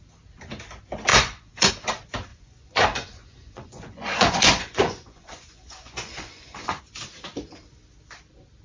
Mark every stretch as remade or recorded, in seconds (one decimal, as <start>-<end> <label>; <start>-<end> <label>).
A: 0.0-1.1 recorded; 1.1-1.7 remade; 1.7-2.3 recorded; 2.3-6.8 remade; 6.8-8.6 recorded